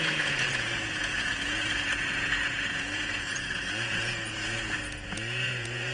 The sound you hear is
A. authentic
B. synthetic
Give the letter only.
B